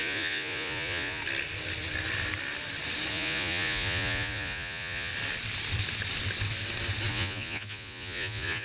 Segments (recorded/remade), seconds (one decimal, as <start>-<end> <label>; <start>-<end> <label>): 0.0-1.2 remade; 1.2-3.1 recorded; 3.1-5.1 remade; 5.1-7.1 recorded; 7.1-8.6 remade